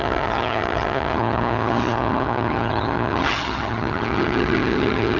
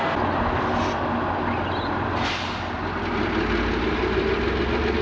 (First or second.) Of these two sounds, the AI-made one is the first